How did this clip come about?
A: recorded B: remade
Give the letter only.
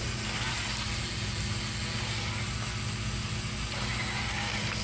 A